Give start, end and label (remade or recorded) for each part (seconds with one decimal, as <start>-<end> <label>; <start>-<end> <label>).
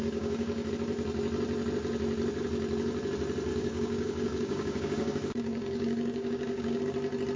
0.0-0.7 remade; 0.7-3.5 recorded; 3.5-6.8 remade; 6.8-7.4 recorded